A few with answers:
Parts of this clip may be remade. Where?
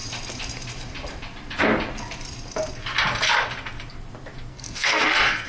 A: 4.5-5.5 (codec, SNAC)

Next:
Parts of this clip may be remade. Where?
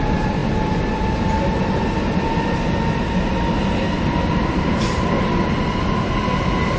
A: none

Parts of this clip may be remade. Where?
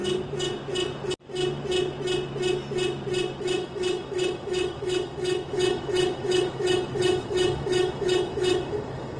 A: 3.4-9.2 (autoencoder, DAC-VAE)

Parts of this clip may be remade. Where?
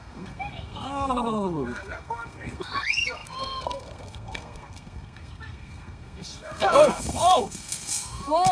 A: 0.0-8.5 (codec, SNAC)